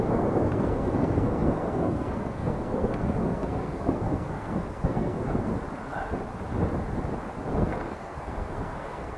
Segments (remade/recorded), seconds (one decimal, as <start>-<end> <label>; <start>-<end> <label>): 0.0-5.5 remade; 5.5-7.5 recorded; 7.5-9.2 remade